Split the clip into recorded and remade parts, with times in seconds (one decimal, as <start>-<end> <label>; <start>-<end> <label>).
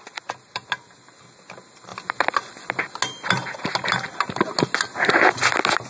0.0-5.9 recorded